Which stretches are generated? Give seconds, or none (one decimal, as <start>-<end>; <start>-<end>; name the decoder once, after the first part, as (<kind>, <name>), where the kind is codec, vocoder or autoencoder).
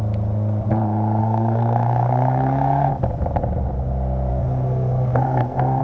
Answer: 1.2-2.9 (codec, SNAC); 4.3-5.8